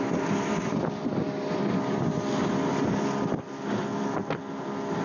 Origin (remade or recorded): recorded